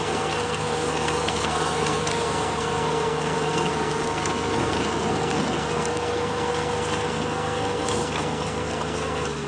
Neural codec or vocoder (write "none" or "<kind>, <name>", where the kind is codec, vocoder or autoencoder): codec, SNAC